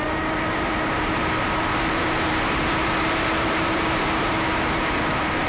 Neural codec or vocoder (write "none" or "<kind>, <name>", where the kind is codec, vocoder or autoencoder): vocoder, BigVGAN v2